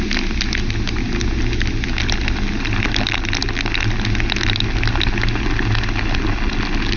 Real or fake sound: real